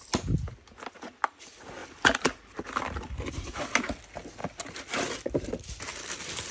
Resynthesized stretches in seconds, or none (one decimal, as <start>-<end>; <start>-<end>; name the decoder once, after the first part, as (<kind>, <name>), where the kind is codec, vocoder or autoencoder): 1.8-3.8 (vocoder, BigVGAN v2); 5.9-6.5